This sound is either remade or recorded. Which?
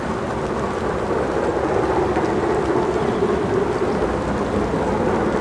recorded